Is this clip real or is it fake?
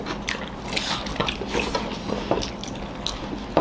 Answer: real